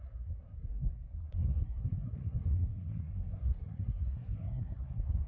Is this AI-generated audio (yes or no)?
yes